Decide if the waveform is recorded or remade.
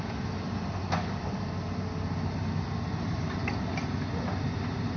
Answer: recorded